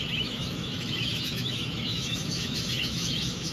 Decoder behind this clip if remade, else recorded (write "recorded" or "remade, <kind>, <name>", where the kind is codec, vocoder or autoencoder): remade, autoencoder, DAC-VAE